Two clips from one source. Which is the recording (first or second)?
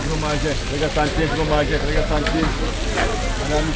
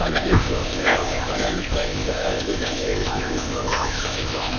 first